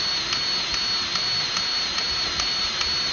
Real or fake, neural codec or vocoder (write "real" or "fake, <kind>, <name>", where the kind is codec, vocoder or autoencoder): real